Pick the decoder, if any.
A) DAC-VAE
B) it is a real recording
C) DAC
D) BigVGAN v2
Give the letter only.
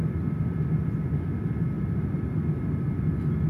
B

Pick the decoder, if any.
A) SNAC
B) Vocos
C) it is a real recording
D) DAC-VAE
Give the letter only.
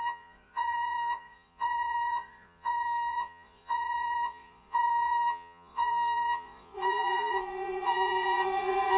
B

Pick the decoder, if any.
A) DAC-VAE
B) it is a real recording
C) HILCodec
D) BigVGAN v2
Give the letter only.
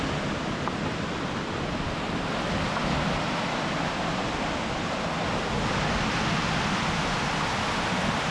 B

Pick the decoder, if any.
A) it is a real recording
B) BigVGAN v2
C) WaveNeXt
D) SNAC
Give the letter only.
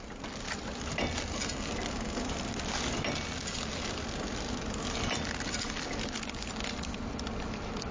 A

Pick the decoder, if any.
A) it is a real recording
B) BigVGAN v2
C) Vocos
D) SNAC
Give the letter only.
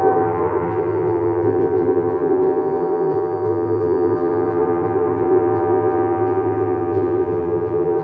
B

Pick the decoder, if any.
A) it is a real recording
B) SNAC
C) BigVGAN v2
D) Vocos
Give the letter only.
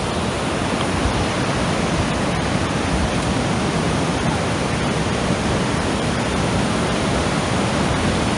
C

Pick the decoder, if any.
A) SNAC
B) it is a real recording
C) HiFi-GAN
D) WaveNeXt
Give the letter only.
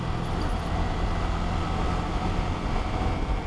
B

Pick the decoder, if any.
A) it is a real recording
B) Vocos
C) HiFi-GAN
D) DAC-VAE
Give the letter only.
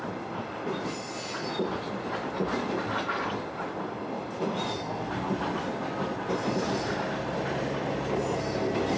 A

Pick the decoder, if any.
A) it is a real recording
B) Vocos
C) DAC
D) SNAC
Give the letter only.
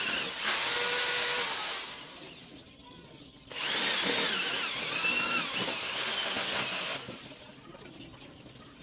A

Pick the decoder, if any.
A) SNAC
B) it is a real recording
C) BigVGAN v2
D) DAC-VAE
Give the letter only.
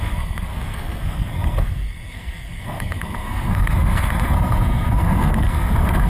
A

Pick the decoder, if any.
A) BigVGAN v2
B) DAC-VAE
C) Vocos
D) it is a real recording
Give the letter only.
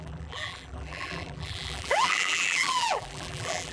A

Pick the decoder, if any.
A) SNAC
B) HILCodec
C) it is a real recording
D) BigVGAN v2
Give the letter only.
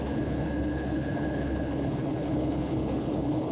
B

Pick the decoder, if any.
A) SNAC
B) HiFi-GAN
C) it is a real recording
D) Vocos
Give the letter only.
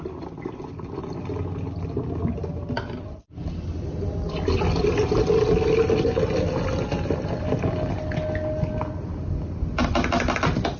C